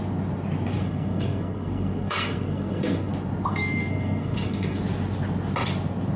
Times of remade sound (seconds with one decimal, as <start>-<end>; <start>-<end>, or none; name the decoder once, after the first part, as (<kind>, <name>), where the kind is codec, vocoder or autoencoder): 0.7-3.1 (codec, SNAC); 3.5-4.8